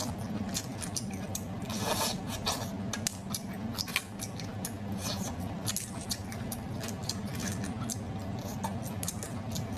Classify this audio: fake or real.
real